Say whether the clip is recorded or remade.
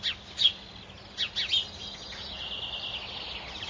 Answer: recorded